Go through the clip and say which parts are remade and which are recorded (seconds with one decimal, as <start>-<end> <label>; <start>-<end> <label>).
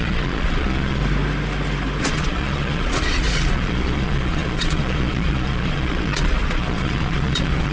0.0-1.0 remade; 1.0-2.0 recorded; 2.0-7.7 remade